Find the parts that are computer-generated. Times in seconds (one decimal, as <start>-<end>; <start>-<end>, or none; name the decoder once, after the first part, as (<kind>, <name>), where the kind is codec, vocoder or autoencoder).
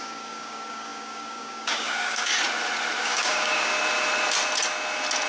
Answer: 0.0-2.3 (codec, DAC); 3.0-3.7